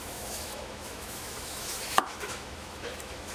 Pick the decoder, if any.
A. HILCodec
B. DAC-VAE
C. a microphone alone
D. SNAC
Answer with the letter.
B